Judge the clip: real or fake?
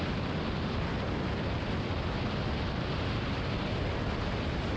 real